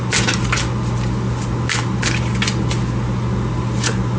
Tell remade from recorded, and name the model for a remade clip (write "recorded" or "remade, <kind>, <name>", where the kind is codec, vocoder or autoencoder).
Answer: recorded